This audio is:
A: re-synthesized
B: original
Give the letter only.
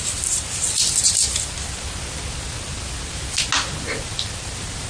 B